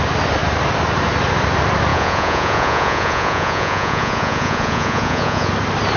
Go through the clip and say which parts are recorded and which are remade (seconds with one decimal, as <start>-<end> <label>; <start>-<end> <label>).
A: 0.0-1.9 recorded; 1.9-5.5 remade; 5.5-6.0 recorded

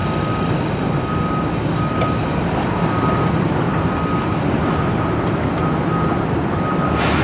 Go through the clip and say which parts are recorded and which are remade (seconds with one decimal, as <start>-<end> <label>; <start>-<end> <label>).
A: 0.0-7.2 recorded